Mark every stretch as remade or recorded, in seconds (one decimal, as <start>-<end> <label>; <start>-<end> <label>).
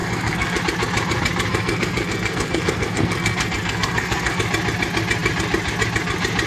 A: 0.0-0.6 remade; 0.6-1.5 recorded; 1.5-4.4 remade; 4.4-6.5 recorded